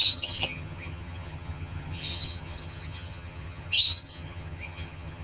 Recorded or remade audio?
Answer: remade